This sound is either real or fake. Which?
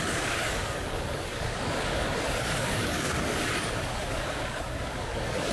fake